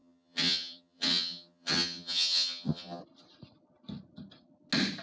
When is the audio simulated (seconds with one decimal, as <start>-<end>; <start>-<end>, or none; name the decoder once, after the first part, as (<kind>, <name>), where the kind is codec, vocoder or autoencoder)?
0.0-3.0 (vocoder, HiFi-GAN)